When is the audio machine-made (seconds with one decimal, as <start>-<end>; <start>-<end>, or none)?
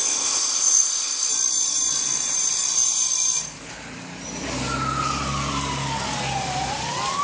0.0-1.3